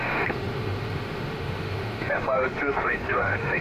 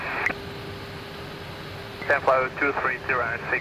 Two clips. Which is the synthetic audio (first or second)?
first